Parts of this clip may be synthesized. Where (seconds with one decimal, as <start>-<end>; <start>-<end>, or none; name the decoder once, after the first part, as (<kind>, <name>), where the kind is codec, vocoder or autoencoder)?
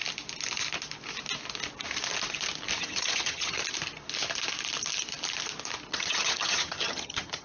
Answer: 2.8-3.6 (vocoder, HiFi-GAN); 5.9-7.4